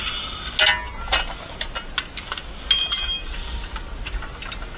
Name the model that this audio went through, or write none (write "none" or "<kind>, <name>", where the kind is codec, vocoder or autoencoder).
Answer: none